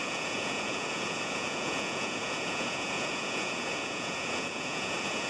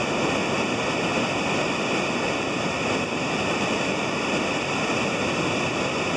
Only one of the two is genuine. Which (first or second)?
second